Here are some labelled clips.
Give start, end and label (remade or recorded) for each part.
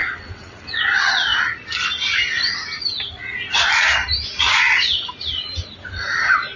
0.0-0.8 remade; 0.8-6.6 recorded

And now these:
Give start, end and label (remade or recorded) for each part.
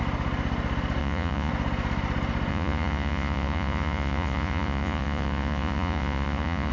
0.0-1.0 recorded; 1.0-1.5 remade; 1.5-2.5 recorded; 2.5-6.7 remade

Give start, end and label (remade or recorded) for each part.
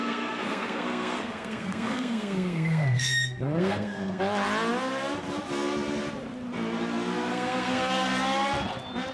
0.0-4.2 remade; 4.2-7.3 recorded; 7.3-7.9 remade; 7.9-9.1 recorded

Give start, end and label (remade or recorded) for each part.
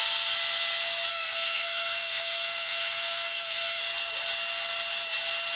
0.0-1.1 recorded; 1.1-3.8 remade; 3.8-5.6 recorded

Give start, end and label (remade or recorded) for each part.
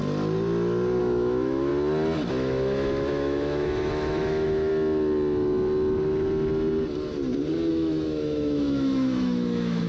0.0-1.0 recorded; 1.0-1.7 remade; 1.7-2.3 recorded; 2.3-4.7 remade; 4.7-7.7 recorded; 7.7-9.9 remade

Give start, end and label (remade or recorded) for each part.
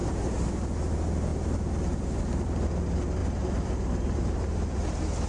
0.0-0.5 remade; 0.5-3.2 recorded; 3.2-5.3 remade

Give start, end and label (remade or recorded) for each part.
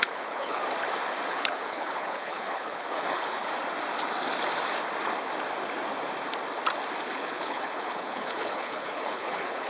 0.0-0.6 remade; 0.6-1.3 recorded; 1.3-3.5 remade; 3.5-7.1 recorded; 7.1-9.7 remade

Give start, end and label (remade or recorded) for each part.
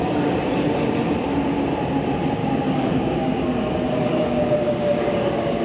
0.0-2.4 recorded; 2.4-5.6 remade